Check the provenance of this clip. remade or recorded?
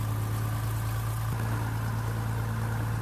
recorded